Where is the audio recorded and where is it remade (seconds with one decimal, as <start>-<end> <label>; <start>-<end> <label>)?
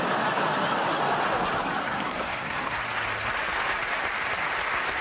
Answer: 0.0-1.8 recorded; 1.8-2.8 remade; 2.8-5.0 recorded